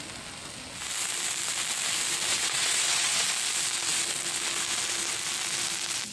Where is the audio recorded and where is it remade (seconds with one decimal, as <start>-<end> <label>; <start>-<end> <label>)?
0.0-2.3 recorded; 2.3-3.3 remade; 3.3-6.1 recorded